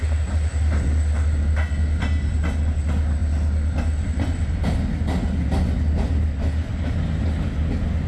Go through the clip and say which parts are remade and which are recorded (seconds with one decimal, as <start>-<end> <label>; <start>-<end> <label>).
0.0-8.1 recorded